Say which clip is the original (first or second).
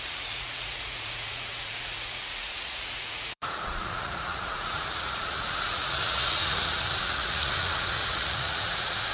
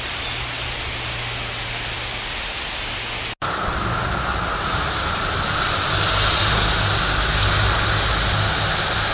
second